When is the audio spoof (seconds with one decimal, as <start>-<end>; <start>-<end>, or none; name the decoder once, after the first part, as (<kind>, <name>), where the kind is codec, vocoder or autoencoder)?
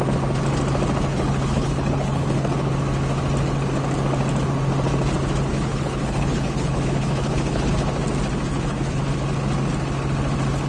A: 1.1-2.7 (codec, HILCodec); 5.5-7.7; 8.5-9.0